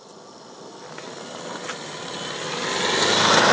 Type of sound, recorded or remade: recorded